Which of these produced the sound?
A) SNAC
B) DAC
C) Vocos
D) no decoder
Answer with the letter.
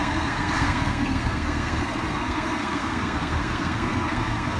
A